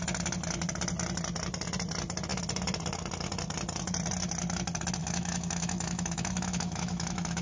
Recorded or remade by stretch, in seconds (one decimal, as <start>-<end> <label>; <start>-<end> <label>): 0.0-5.0 recorded; 5.0-7.4 remade